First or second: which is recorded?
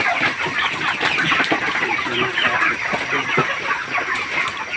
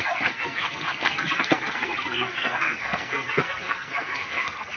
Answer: first